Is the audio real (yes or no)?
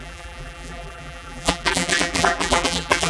no